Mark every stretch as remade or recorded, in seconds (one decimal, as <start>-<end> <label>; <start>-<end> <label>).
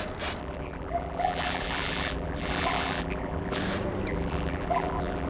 0.0-0.4 recorded; 0.4-3.6 remade; 3.6-4.1 recorded; 4.1-5.3 remade